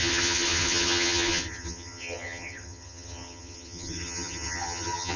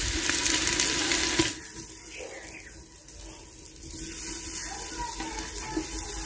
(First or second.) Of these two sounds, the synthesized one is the first